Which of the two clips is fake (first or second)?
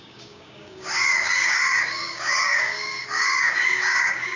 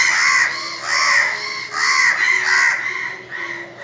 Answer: first